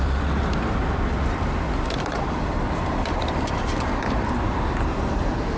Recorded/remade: remade